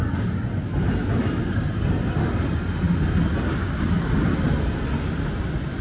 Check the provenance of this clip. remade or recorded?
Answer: recorded